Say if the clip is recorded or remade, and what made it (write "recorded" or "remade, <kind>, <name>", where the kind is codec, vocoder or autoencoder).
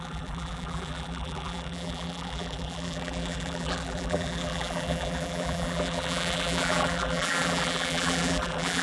remade, vocoder, BigVGAN v2